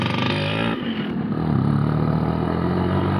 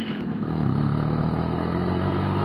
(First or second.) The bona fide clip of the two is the first